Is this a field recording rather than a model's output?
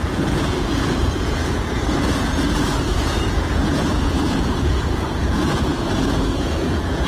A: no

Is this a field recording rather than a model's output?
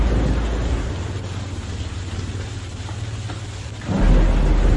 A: yes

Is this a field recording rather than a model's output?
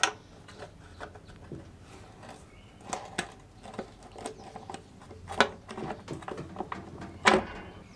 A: yes